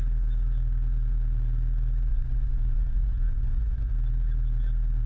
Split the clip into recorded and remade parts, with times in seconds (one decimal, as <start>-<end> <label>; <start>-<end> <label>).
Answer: 0.0-2.1 recorded; 2.1-3.9 remade; 3.9-5.1 recorded